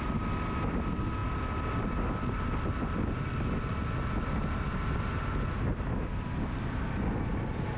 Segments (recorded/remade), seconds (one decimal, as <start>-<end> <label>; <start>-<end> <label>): 0.0-7.8 recorded